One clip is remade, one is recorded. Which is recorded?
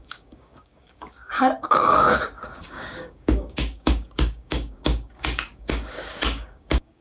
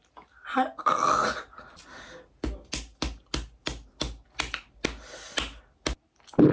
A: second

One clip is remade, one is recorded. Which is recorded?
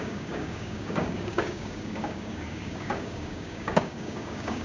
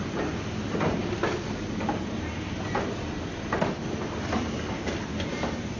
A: second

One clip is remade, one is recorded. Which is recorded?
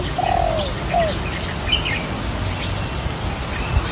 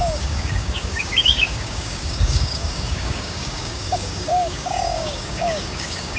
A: first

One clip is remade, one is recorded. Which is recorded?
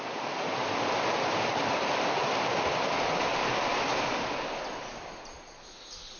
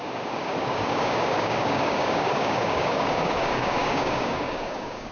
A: first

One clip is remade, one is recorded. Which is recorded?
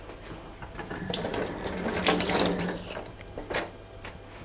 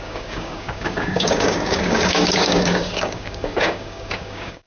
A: first